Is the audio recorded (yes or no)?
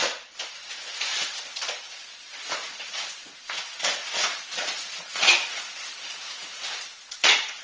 no